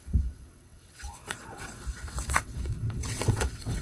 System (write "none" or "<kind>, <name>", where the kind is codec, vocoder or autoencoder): vocoder, WaveNeXt